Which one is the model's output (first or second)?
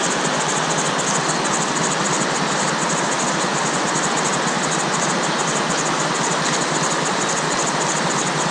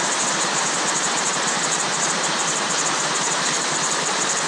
second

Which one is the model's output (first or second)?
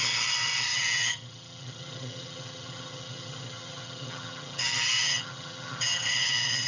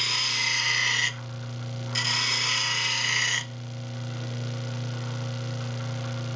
first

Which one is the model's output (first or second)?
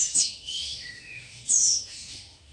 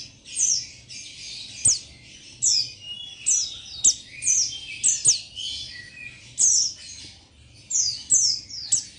first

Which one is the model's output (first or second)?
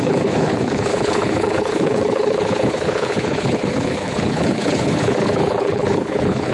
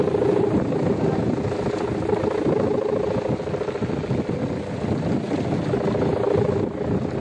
first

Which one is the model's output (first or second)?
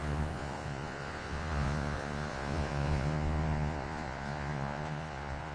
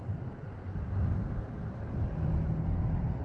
first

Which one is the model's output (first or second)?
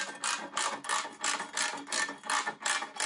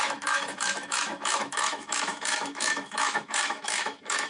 second